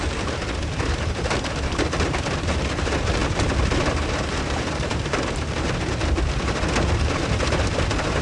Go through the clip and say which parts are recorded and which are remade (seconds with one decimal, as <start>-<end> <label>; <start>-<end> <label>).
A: 0.0-8.2 remade